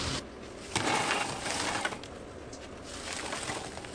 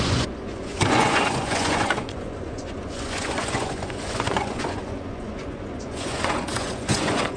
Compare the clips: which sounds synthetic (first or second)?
second